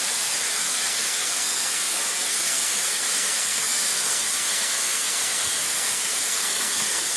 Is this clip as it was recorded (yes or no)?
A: no